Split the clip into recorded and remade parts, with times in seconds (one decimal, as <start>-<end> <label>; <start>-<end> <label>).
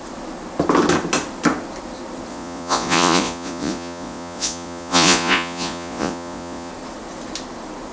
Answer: 0.0-2.3 recorded; 2.3-6.7 remade; 6.7-7.9 recorded